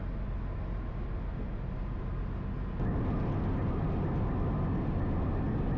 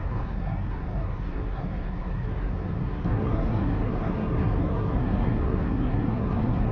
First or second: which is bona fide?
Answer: first